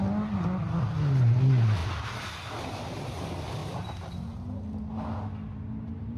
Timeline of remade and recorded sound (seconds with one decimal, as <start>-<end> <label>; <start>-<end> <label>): 0.0-1.8 recorded; 1.8-2.8 remade; 2.8-3.6 recorded; 3.6-4.1 remade; 4.1-6.2 recorded